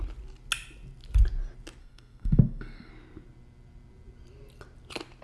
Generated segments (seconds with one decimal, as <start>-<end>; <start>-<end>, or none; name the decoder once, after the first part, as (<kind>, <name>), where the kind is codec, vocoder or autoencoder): 1.8-2.9 (codec, SNAC)